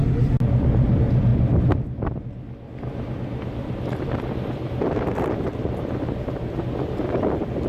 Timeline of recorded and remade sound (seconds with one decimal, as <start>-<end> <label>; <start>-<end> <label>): 0.0-7.7 recorded